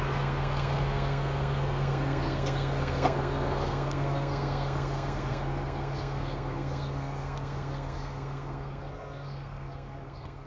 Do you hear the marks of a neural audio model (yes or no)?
yes